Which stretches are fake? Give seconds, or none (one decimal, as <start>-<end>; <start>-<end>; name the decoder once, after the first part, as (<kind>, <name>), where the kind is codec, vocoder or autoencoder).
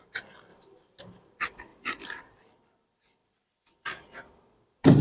0.5-1.0 (vocoder, BigVGAN v2); 1.7-2.2; 3.2-5.0